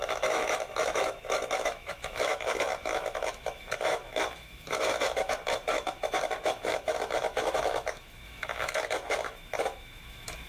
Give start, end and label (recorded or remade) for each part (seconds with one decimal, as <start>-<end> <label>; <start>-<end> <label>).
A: 0.0-10.5 remade